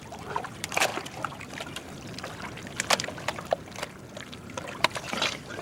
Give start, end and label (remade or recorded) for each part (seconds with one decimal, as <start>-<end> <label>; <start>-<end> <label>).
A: 0.0-0.9 remade; 0.9-1.4 recorded; 1.4-1.8 remade; 1.8-4.2 recorded; 4.2-5.6 remade